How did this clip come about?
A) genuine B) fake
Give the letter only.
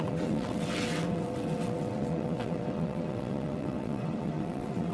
B